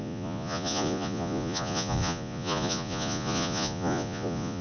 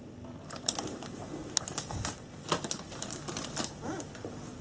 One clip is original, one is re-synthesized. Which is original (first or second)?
second